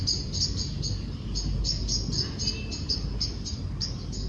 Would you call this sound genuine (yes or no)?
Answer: yes